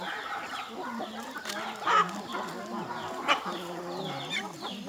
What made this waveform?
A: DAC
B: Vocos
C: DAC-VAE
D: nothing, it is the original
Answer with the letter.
D